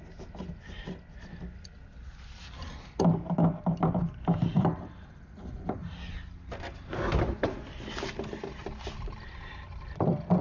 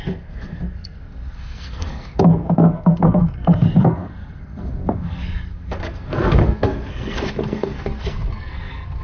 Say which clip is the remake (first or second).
second